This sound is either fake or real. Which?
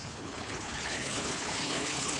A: fake